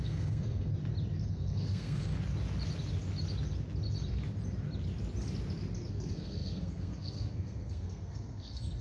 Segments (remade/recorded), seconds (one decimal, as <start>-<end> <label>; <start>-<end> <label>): 0.0-0.7 remade; 0.7-1.3 recorded; 1.3-2.1 remade; 2.1-5.9 recorded; 5.9-8.8 remade